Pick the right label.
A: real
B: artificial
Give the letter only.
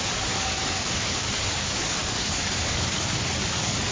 B